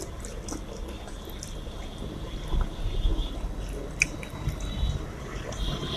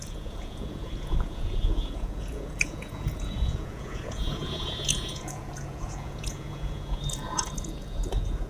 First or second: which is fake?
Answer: second